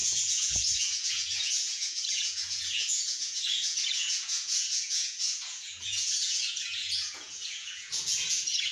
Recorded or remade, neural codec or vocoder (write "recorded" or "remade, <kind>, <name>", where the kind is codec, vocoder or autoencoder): remade, vocoder, Vocos